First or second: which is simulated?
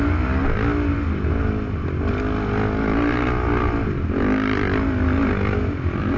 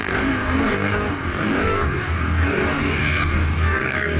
second